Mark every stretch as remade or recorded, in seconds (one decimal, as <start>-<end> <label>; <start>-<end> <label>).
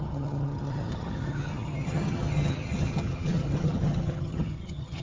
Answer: 0.0-5.0 remade